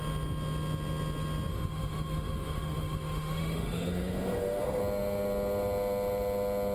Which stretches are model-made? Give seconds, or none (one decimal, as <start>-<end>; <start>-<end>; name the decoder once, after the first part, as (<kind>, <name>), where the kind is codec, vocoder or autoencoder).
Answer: 1.5-4.8 (autoencoder, DAC-VAE)